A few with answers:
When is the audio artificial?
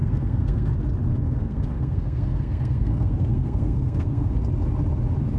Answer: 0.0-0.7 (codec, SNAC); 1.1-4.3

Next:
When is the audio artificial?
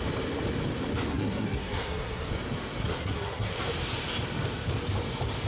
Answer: 1.1-2.3 (codec, SNAC); 2.8-3.6